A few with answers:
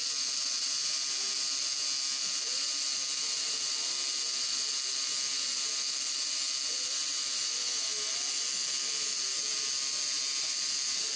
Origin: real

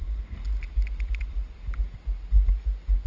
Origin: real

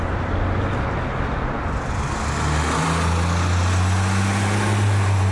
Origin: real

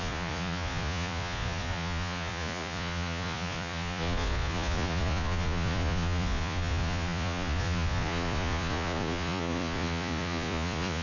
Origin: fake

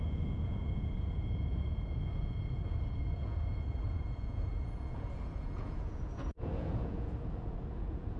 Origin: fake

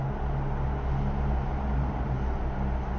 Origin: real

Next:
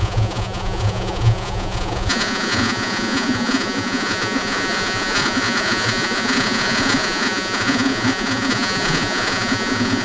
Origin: fake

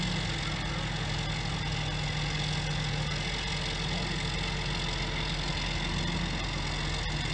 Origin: real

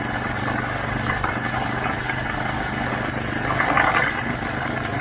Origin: real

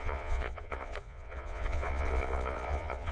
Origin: fake